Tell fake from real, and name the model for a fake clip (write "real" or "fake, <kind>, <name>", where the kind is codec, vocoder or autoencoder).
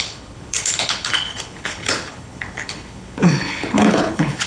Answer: fake, codec, HILCodec